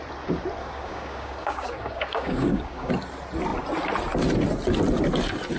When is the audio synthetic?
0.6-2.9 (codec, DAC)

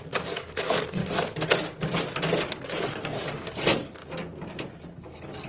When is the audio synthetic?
0.0-1.0 (codec, DAC); 2.9-4.0; 4.9-5.5

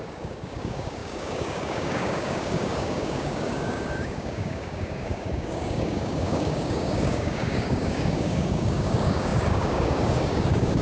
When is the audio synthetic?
0.0-10.8 (codec, DAC)

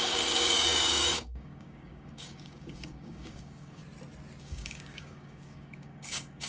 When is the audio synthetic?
0.0-3.8 (codec, DAC); 4.4-6.5